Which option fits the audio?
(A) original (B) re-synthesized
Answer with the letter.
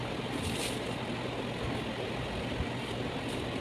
A